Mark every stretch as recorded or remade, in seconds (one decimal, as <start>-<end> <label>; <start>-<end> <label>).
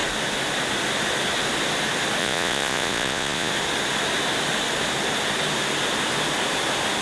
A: 0.0-2.2 recorded; 2.2-3.5 remade; 3.5-7.0 recorded